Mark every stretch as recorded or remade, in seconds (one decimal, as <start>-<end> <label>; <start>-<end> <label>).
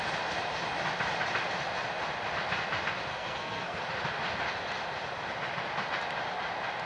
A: 0.0-3.1 recorded; 3.1-3.8 remade; 3.8-6.9 recorded